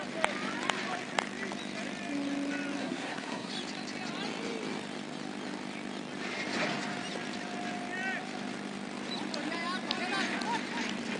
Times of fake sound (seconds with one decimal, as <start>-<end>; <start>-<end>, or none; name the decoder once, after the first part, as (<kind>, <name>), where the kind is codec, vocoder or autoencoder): 2.8-3.5 (codec, SNAC)